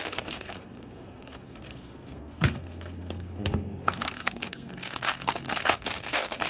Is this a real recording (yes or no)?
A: no